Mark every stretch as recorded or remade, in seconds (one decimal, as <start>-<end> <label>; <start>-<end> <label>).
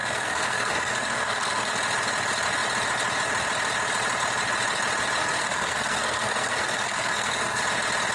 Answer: 0.0-1.7 remade; 1.7-5.2 recorded; 5.2-7.6 remade; 7.6-8.1 recorded